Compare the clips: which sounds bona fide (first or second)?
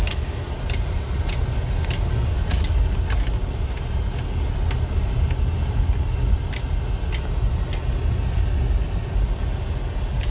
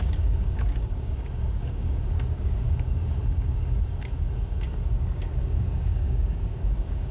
first